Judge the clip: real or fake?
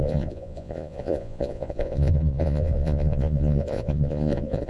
fake